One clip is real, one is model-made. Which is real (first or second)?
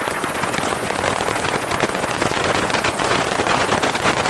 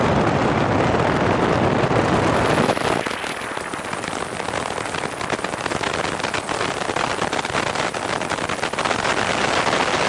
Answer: second